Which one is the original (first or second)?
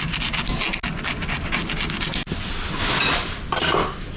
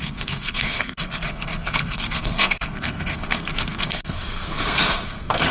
first